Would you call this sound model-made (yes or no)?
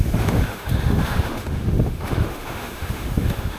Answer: yes